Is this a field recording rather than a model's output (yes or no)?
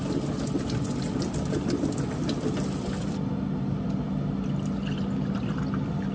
yes